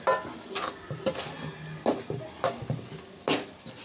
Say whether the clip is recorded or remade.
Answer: recorded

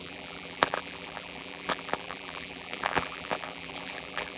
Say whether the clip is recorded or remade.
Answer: remade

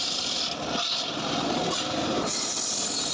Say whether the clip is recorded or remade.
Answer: remade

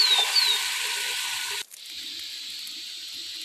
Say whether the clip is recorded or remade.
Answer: recorded